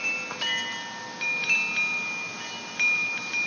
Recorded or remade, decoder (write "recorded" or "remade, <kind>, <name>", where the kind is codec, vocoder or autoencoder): recorded